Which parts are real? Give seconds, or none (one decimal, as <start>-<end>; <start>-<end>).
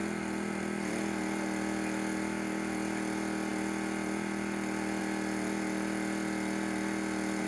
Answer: 0.0-7.5